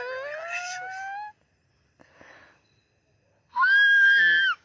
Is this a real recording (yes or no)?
yes